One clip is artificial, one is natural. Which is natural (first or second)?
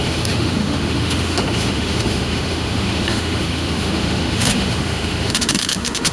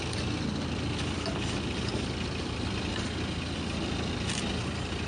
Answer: second